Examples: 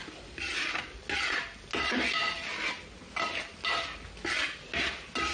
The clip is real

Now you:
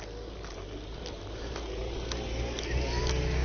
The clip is real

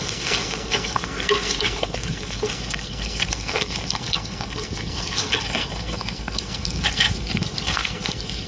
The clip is fake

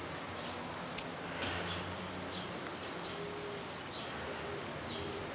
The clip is real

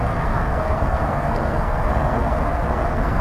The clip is fake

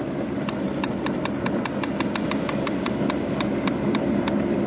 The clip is real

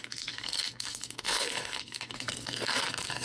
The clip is fake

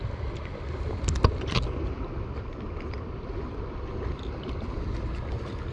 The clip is real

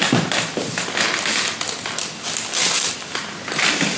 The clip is real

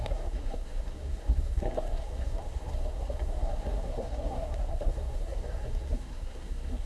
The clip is fake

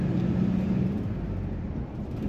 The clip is real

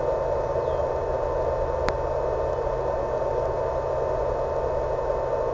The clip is real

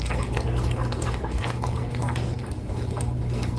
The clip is fake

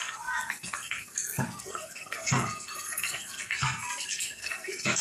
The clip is fake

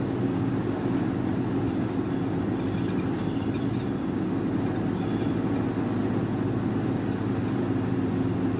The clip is real